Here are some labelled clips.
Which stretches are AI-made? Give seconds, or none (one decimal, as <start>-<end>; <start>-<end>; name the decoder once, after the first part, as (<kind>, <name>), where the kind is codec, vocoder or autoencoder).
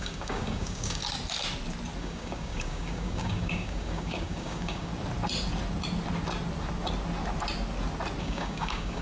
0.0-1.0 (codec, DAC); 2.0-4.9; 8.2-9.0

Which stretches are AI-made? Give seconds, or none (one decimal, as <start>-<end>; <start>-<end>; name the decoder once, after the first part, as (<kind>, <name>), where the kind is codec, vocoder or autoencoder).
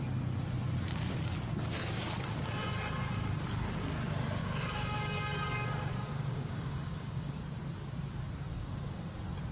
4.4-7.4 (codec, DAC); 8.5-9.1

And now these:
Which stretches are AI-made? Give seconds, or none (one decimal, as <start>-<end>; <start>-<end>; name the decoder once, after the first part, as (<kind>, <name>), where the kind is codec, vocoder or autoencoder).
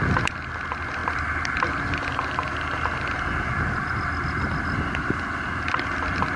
none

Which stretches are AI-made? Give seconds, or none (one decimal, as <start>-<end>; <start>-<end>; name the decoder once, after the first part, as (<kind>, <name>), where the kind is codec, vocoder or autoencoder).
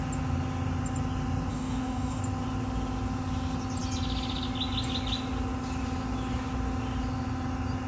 1.5-2.2 (codec, DAC)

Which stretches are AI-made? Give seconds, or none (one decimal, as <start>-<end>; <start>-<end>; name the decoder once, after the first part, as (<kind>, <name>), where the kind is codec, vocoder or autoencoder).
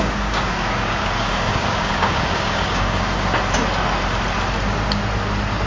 0.0-3.3 (codec, DAC)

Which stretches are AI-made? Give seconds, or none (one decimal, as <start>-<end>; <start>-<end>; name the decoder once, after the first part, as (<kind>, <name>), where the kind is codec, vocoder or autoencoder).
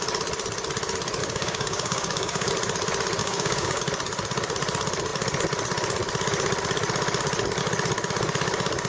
1.2-2.5 (codec, DAC); 3.2-3.8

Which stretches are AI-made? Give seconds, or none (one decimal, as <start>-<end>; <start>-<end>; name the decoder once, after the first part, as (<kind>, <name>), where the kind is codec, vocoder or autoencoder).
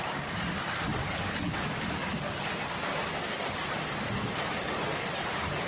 1.0-1.6 (codec, DAC)